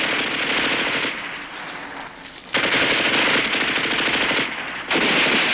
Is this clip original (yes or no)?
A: yes